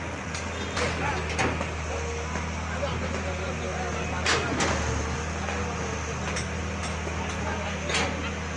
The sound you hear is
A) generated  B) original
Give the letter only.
B